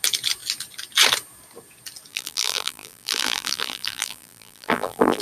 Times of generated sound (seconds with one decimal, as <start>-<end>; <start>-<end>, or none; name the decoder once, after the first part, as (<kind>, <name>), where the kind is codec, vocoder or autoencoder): 2.1-5.2 (vocoder, BigVGAN v2)